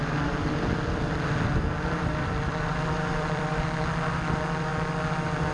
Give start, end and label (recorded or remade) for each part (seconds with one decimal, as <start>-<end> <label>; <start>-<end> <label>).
0.0-2.0 recorded; 2.0-3.6 remade; 3.6-5.5 recorded